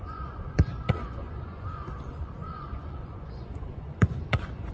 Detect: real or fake fake